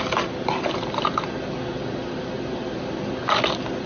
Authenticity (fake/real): real